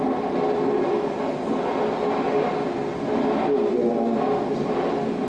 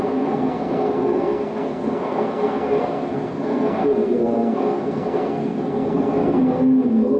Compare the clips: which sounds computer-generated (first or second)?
second